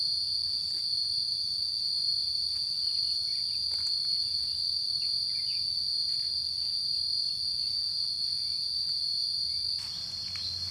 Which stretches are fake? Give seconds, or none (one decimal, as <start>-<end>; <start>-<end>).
0.0-3.3; 3.9-4.5; 7.3-8.8